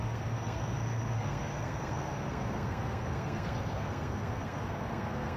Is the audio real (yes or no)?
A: no